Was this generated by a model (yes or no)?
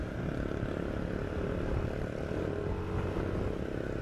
no